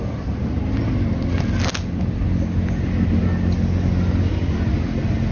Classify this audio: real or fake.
real